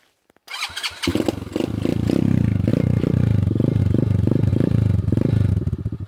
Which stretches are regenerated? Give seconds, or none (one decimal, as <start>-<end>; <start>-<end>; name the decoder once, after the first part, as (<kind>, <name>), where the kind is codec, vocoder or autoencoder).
4.5-5.5 (vocoder, BigVGAN v2)